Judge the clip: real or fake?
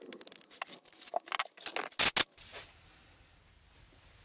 real